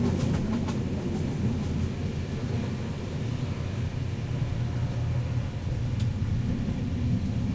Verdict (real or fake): real